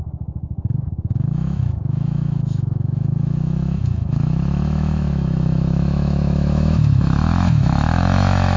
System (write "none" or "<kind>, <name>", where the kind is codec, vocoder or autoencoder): autoencoder, DAC-VAE